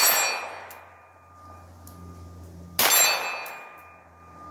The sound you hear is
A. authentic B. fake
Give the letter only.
A